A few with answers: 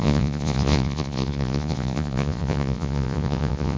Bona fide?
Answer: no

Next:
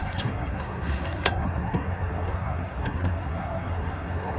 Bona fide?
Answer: no